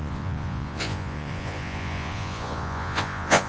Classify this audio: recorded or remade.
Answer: remade